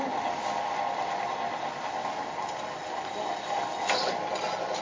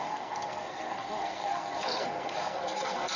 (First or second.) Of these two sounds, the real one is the first